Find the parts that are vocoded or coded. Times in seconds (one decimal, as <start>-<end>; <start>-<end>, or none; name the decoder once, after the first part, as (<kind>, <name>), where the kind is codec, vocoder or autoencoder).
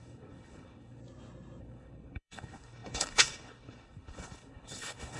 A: 0.0-1.0 (codec, HILCodec); 1.6-5.2